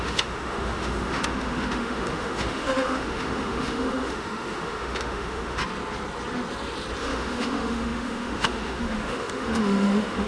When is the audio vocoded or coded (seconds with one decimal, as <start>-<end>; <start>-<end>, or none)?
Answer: 0.0-5.6; 7.0-10.3